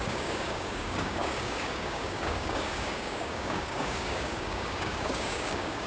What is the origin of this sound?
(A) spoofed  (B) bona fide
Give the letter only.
A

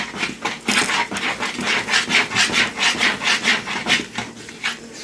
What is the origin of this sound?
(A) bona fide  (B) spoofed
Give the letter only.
A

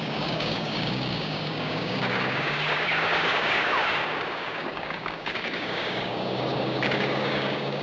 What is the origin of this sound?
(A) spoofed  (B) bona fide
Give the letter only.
A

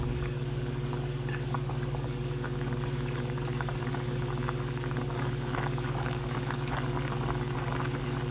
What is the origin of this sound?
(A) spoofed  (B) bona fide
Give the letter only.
A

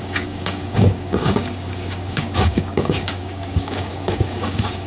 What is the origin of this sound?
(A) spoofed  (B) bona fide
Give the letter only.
A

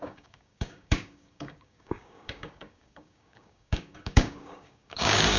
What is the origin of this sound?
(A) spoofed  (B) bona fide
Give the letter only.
A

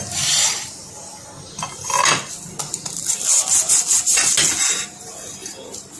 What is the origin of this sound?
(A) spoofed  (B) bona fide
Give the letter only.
B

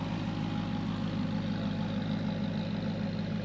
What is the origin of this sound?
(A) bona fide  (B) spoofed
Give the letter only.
A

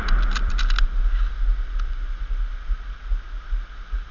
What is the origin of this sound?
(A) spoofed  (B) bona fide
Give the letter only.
B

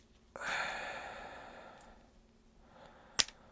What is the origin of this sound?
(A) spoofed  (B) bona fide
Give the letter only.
B